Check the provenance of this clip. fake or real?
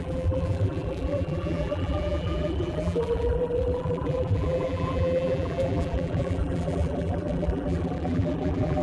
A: fake